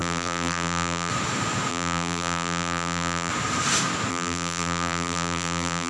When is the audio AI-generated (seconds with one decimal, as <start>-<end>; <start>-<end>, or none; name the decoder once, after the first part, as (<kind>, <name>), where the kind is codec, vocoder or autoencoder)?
0.0-1.1 (vocoder, BigVGAN v2); 1.7-3.3; 4.1-5.9